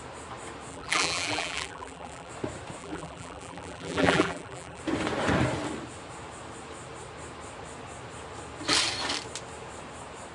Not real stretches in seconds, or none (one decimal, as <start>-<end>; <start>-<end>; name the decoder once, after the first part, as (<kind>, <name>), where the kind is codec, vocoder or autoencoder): 0.7-2.3 (vocoder, BigVGAN v2); 2.8-4.8